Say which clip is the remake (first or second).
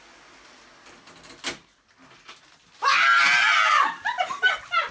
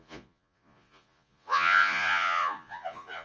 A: second